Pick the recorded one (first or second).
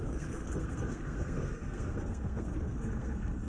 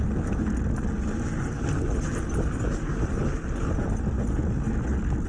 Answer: second